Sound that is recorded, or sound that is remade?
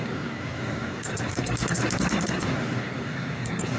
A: remade